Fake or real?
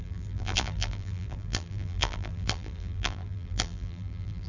fake